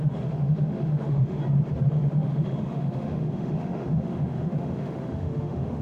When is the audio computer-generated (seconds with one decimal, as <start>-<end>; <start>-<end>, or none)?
0.0-1.4; 1.9-5.8

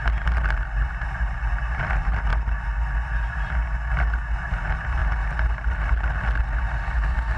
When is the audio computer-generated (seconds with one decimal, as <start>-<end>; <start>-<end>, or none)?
none